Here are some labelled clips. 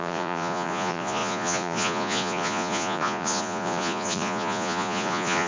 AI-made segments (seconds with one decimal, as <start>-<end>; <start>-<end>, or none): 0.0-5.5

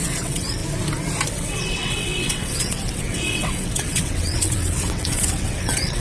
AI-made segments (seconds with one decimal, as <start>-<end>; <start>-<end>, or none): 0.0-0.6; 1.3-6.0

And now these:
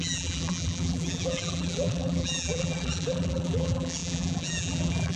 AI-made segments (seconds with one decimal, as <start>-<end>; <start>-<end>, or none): 0.0-5.2

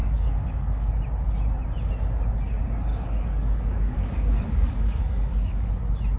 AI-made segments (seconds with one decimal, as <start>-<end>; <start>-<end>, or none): 0.0-0.9; 2.9-5.7

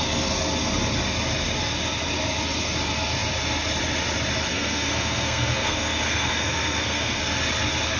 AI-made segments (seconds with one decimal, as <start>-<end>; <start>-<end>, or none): 4.5-7.2